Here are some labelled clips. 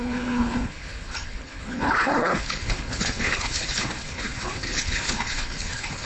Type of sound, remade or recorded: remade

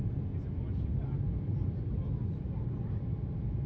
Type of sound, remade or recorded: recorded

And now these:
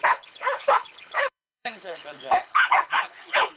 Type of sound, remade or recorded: remade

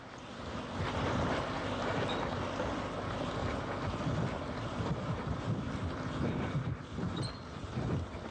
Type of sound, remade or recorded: recorded